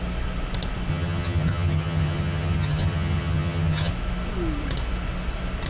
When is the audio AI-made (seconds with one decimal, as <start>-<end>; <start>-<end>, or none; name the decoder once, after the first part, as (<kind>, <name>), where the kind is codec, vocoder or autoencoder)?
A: 0.9-3.9 (vocoder, HiFi-GAN)